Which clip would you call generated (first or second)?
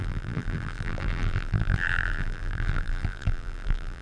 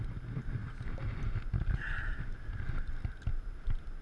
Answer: first